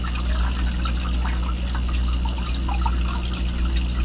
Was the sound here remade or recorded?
recorded